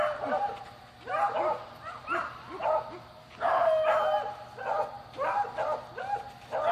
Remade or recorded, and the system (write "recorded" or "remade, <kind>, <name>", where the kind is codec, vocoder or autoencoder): recorded